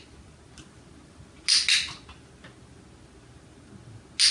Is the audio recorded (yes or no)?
yes